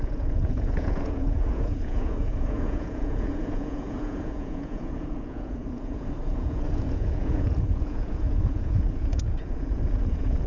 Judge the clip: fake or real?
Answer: fake